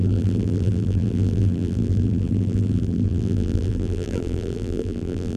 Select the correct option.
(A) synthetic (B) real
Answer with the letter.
A